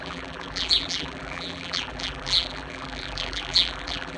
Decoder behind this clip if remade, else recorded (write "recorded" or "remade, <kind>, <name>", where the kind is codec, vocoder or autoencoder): remade, vocoder, BigVGAN v2